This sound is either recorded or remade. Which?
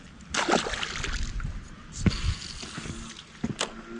recorded